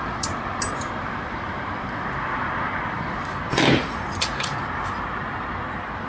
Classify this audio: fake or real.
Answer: fake